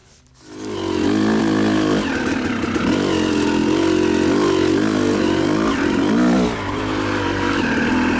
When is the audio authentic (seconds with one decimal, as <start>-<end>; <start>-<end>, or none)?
0.0-8.2